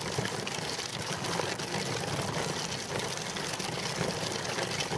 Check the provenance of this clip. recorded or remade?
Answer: recorded